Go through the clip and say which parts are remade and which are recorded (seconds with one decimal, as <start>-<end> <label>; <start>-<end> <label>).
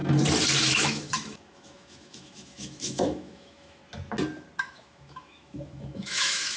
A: 0.0-0.6 recorded; 0.6-3.8 remade; 3.8-4.6 recorded; 4.6-6.6 remade